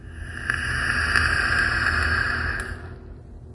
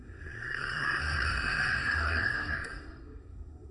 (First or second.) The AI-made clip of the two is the second